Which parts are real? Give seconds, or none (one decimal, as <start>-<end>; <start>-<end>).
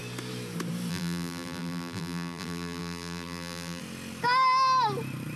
0.0-0.9; 3.8-5.4